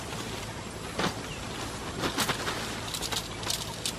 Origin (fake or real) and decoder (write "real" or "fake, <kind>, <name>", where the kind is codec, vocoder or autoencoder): real